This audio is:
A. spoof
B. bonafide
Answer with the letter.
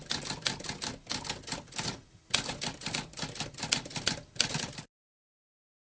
B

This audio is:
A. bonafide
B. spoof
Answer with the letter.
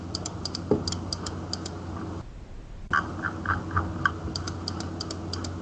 A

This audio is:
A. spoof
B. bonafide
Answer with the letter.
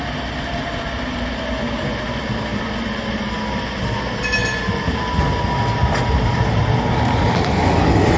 B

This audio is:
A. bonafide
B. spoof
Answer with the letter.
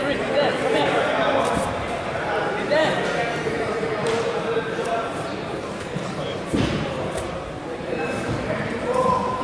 B